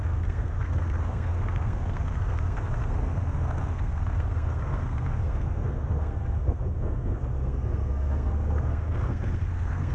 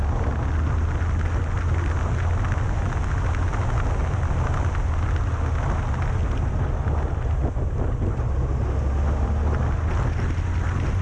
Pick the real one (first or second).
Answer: second